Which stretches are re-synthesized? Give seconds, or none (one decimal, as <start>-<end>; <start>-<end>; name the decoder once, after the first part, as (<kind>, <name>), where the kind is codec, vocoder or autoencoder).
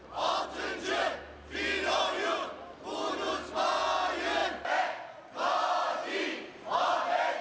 none